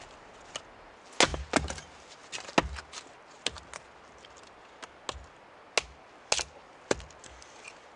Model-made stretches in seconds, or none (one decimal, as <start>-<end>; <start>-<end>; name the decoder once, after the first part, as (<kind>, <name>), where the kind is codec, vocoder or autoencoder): none